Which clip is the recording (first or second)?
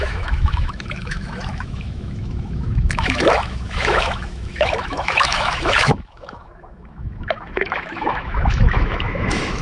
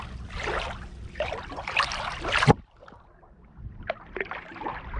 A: second